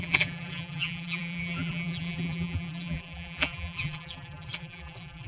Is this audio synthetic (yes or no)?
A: yes